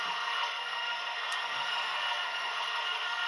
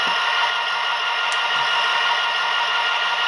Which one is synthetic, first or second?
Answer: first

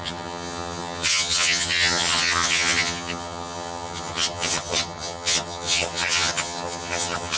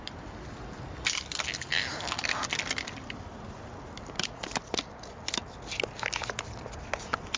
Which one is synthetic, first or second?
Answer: first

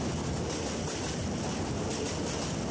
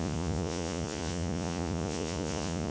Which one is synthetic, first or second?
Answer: second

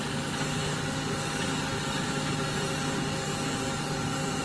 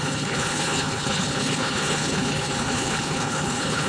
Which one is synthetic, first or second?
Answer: second